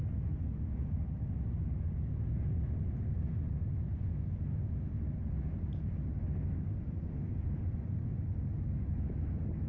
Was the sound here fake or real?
real